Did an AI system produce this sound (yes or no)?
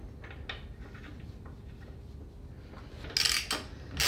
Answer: no